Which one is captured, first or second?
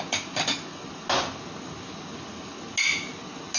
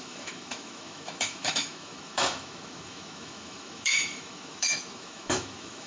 first